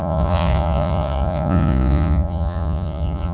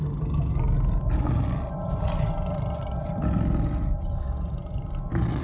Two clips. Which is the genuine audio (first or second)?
second